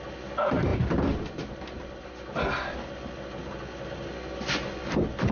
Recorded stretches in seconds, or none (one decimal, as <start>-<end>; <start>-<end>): 0.0-5.3